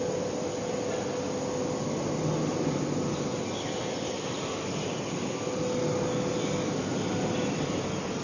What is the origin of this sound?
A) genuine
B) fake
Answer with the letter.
A